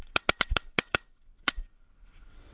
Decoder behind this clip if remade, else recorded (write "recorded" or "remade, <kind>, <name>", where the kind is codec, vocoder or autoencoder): remade, vocoder, WaveNeXt